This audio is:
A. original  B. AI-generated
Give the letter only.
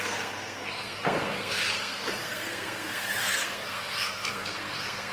B